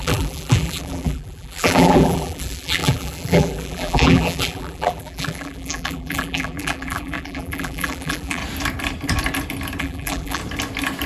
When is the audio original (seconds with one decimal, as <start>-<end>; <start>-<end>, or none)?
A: 8.4-9.8; 10.4-11.1